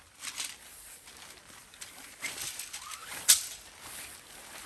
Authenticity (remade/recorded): recorded